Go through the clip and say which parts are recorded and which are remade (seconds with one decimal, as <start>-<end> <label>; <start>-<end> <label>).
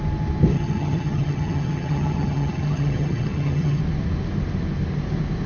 0.0-0.5 recorded; 0.5-3.8 remade; 3.8-5.5 recorded